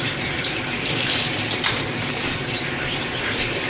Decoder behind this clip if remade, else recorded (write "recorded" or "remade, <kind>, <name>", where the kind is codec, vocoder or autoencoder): recorded